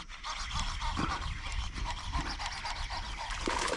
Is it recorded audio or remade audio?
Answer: recorded